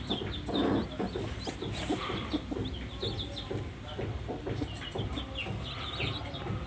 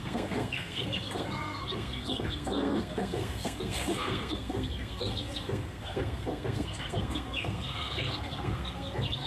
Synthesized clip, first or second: second